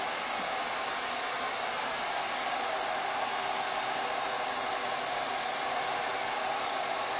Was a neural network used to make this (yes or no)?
no